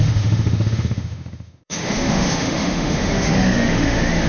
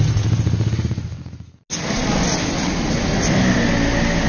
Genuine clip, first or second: second